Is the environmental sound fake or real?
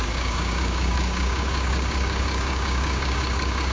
fake